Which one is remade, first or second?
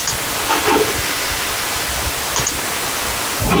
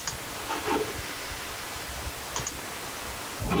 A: second